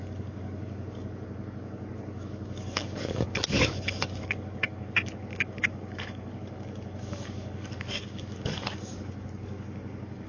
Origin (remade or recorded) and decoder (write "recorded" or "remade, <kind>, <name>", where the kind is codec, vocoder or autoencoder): remade, codec, DAC